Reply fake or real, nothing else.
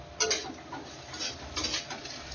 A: real